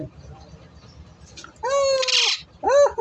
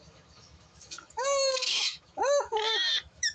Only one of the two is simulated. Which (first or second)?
second